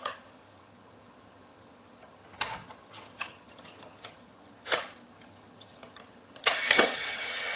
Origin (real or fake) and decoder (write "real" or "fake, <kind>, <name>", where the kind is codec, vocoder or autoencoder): fake, vocoder, HiFi-GAN